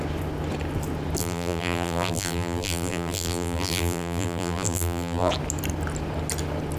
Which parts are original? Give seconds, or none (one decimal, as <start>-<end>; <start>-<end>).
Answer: 0.0-1.2; 5.3-6.8